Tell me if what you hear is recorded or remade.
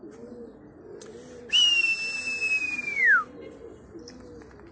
recorded